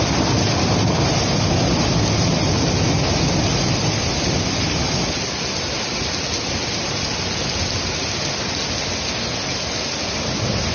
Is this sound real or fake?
real